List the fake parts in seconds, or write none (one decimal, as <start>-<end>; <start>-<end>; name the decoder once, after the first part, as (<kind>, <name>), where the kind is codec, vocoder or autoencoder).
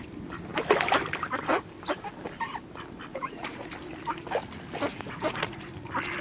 3.1-3.7 (vocoder, Vocos); 4.9-5.7